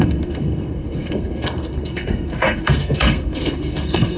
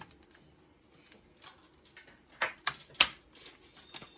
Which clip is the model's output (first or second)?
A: first